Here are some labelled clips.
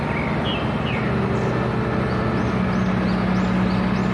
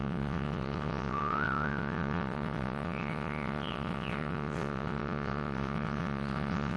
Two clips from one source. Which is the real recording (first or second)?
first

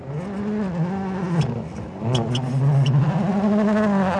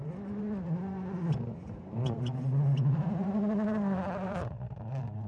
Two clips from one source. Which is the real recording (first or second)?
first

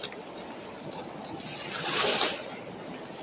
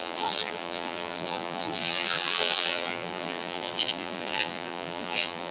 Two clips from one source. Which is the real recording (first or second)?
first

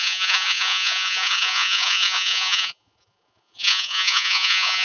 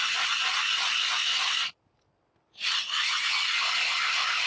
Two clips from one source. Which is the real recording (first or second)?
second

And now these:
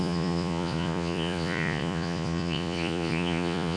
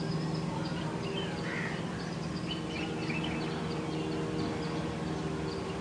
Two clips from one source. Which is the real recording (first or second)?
second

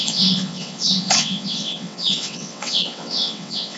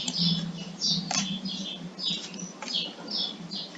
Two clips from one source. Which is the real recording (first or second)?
second